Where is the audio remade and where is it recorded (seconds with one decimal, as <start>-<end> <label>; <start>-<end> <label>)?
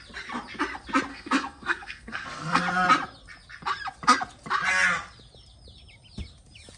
0.0-1.1 recorded; 1.1-2.6 remade; 2.6-6.8 recorded